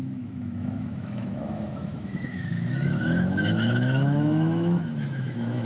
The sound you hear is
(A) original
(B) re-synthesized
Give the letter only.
B